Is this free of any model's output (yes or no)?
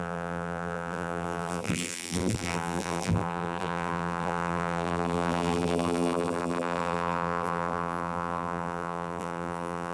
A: no